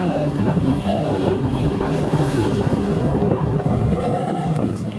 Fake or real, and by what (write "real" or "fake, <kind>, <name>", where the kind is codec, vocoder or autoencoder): fake, codec, SNAC